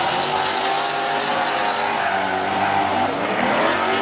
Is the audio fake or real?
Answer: real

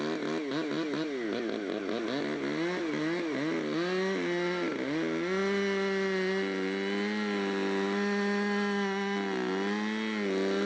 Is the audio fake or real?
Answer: real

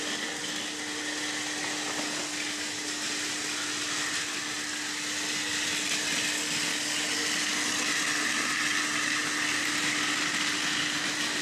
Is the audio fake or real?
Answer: real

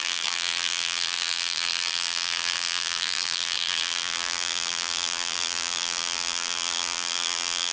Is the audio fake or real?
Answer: fake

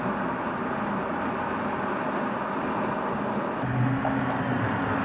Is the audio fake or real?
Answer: real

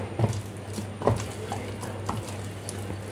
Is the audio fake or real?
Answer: real